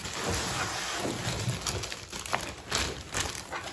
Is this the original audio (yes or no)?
yes